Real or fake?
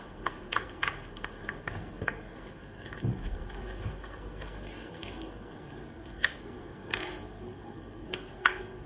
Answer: fake